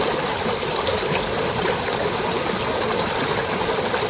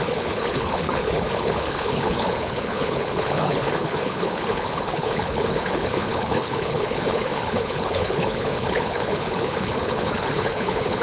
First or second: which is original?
first